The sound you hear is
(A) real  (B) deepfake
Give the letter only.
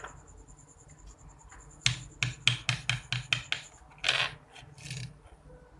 A